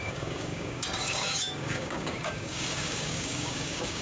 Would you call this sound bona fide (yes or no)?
no